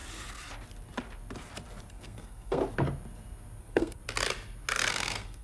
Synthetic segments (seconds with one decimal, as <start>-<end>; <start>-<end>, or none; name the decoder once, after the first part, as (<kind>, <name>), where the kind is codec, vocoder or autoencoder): 1.9-2.6 (codec, SNAC); 3.6-4.0; 4.9-5.4